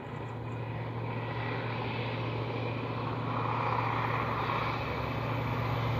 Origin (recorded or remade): recorded